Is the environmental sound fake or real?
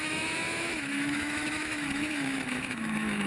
fake